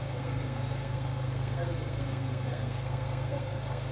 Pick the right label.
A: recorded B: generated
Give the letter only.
B